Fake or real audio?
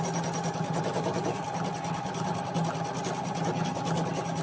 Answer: real